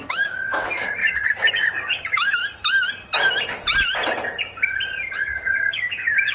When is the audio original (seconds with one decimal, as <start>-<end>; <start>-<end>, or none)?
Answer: 1.0-1.5; 2.4-5.7